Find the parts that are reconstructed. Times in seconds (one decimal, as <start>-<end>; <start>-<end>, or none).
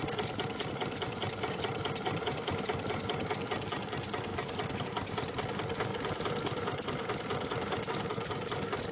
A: 1.7-3.0; 5.9-7.9